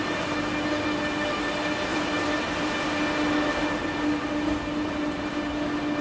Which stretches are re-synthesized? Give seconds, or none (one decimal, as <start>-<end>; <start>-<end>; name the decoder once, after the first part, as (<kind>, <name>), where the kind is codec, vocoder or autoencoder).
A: none